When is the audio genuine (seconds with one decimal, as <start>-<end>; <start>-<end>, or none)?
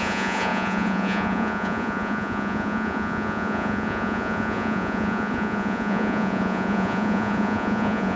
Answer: none